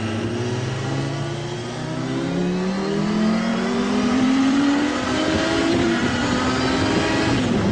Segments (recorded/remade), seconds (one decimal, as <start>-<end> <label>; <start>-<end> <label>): 0.0-3.5 recorded; 3.5-6.4 remade; 6.4-7.7 recorded